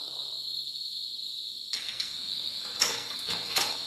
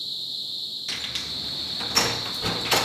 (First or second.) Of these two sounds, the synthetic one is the first